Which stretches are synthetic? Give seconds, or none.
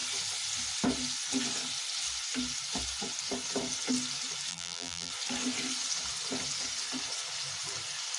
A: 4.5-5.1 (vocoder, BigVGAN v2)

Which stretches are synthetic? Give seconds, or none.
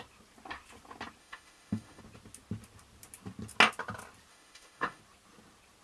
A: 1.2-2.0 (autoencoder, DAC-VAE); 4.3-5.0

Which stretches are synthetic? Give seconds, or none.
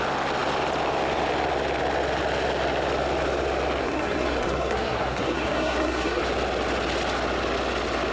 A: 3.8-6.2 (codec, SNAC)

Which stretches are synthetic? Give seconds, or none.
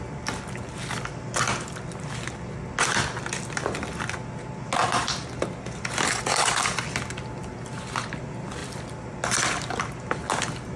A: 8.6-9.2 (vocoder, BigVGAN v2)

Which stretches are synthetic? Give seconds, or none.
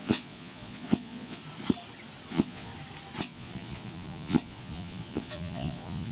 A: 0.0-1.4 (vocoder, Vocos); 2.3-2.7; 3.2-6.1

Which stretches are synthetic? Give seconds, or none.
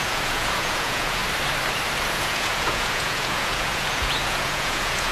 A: 0.0-1.2 (vocoder, Vocos); 2.1-5.1